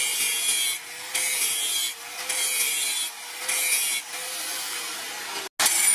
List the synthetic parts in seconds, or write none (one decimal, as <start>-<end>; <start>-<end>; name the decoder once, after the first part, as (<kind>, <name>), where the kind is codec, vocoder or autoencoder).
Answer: none